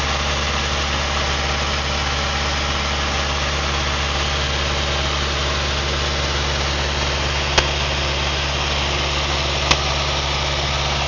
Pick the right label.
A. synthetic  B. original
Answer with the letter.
B